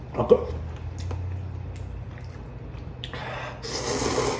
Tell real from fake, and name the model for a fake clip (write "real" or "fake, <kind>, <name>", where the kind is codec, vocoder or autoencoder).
real